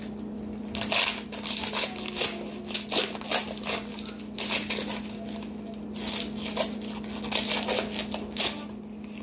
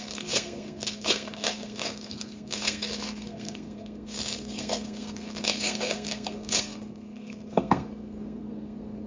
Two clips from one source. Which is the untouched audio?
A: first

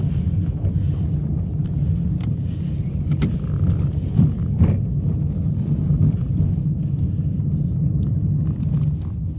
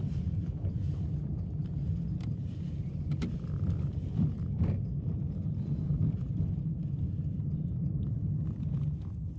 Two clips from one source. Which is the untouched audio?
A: first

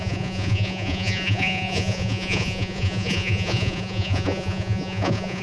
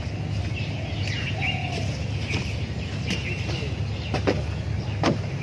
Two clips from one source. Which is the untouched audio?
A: second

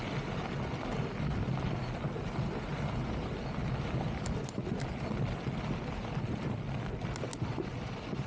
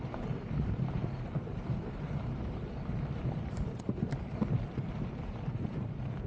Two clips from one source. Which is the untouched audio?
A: first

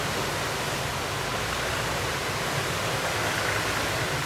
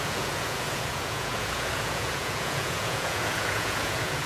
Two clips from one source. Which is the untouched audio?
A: first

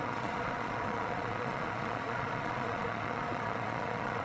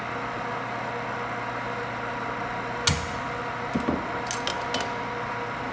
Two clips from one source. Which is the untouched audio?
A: second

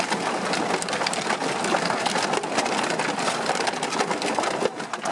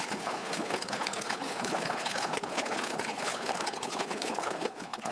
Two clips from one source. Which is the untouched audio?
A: first